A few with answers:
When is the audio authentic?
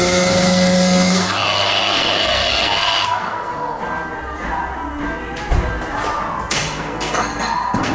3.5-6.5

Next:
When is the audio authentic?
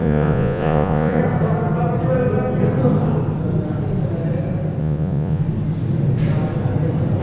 1.2-4.8; 5.4-7.2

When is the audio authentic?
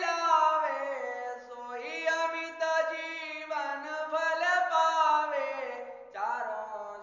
0.0-7.0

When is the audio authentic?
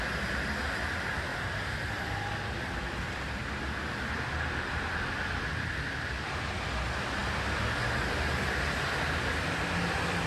0.0-10.3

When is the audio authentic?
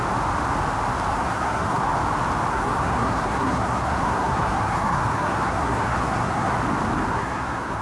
0.0-1.1; 1.9-2.5; 6.5-7.1